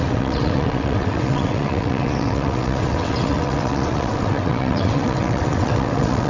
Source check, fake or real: fake